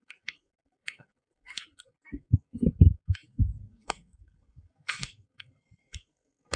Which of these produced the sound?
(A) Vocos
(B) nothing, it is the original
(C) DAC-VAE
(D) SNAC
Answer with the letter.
D